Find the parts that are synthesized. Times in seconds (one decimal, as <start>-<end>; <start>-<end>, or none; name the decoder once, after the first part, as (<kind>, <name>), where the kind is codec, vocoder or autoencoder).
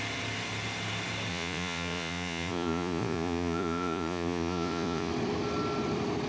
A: 1.3-5.1 (vocoder, Vocos)